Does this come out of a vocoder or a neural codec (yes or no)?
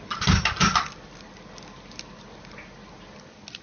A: no